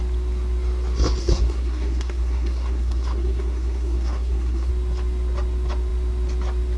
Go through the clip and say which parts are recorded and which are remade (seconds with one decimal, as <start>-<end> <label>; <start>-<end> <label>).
0.0-1.2 recorded; 1.2-4.7 remade; 4.7-6.8 recorded

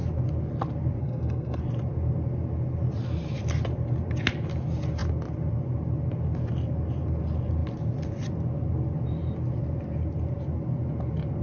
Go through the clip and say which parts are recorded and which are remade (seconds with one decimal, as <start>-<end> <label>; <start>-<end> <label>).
0.0-1.0 recorded; 1.0-1.6 remade; 1.6-11.4 recorded

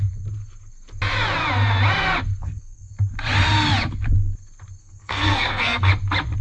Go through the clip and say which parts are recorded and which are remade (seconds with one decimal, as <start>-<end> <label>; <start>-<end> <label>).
0.0-2.4 recorded; 2.4-2.9 remade; 2.9-4.8 recorded; 4.8-5.9 remade; 5.9-6.4 recorded